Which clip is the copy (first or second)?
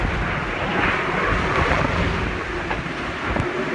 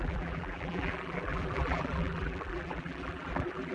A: second